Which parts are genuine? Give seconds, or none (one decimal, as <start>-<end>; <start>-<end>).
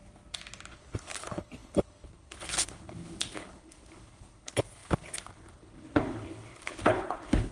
0.0-0.7